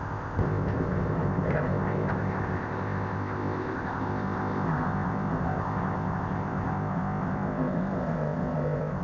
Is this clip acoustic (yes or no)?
no